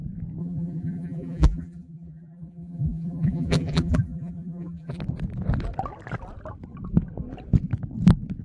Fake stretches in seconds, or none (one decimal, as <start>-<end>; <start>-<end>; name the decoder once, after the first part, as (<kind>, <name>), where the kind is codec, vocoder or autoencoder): 0.4-5.0 (vocoder, BigVGAN v2)